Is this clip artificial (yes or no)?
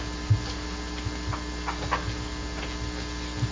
no